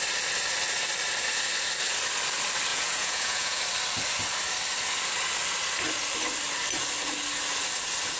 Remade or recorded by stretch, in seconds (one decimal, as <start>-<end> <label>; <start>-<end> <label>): 0.0-2.7 recorded; 2.7-3.6 remade; 3.6-8.2 recorded

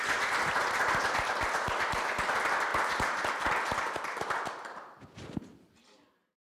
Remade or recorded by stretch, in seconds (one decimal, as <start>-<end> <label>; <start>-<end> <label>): 0.0-2.7 recorded; 2.7-3.3 remade; 3.3-6.5 recorded

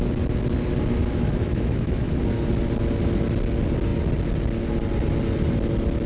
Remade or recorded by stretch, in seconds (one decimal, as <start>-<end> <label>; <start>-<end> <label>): 0.0-1.0 recorded; 1.0-2.1 remade; 2.1-6.1 recorded

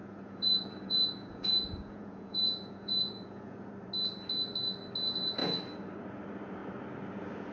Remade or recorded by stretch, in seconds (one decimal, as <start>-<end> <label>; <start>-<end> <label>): 0.0-3.7 remade; 3.7-7.5 recorded

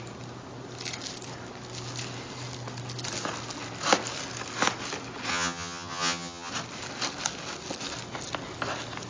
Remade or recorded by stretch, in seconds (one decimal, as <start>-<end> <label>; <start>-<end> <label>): 0.0-5.3 recorded; 5.3-6.5 remade; 6.5-9.1 recorded

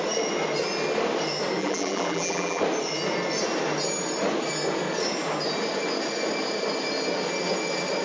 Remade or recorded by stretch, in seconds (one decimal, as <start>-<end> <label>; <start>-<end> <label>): 0.0-1.6 recorded; 1.6-2.6 remade; 2.6-8.0 recorded

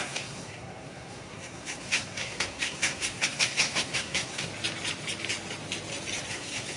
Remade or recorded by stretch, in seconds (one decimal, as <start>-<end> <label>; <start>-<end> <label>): 0.0-4.5 remade; 4.5-6.3 recorded; 6.3-6.8 remade

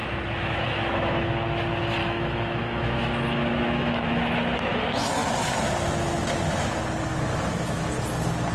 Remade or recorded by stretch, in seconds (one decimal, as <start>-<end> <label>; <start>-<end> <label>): 0.0-1.3 remade; 1.3-2.0 recorded; 2.0-4.2 remade; 4.2-7.3 recorded; 7.3-7.9 remade; 7.9-8.5 recorded